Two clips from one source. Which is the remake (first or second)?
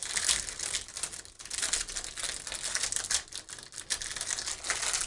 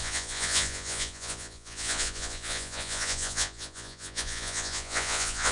second